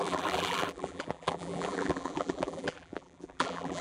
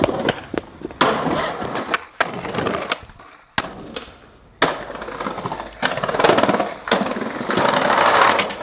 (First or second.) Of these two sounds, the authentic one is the second